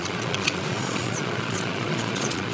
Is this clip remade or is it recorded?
remade